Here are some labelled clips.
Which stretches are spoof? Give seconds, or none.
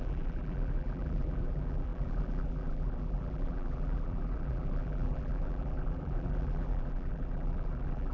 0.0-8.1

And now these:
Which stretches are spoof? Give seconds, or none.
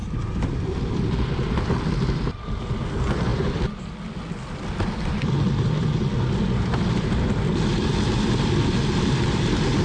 none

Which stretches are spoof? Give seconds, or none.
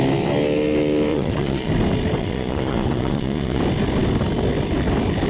1.1-1.7; 2.2-3.6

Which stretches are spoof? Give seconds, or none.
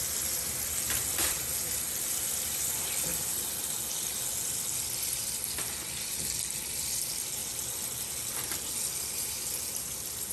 none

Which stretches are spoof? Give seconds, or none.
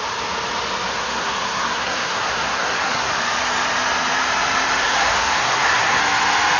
0.9-3.1; 4.8-6.0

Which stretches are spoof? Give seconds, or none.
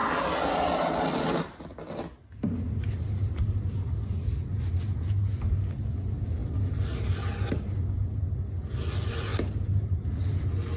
none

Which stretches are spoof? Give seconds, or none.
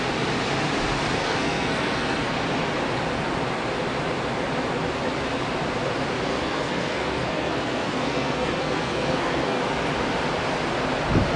1.2-2.4; 6.3-9.6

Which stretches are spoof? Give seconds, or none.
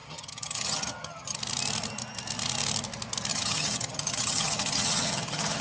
0.0-1.4; 3.3-5.6